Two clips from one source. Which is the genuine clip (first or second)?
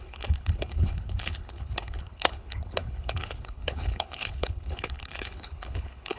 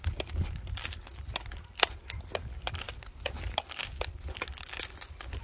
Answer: second